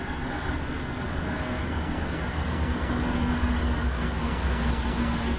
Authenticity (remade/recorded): remade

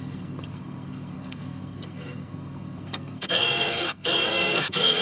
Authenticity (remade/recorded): remade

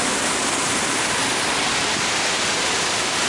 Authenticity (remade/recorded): recorded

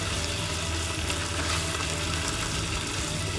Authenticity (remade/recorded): recorded